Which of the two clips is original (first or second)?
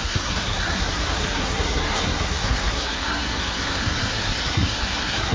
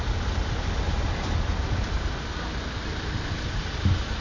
second